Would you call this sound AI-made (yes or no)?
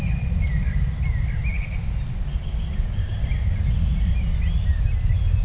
no